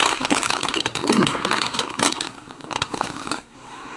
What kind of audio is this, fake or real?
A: fake